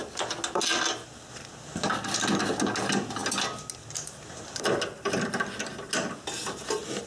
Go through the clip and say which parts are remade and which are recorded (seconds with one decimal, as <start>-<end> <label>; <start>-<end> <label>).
0.0-7.1 recorded